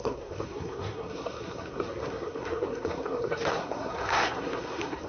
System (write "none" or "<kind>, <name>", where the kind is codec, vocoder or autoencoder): codec, SNAC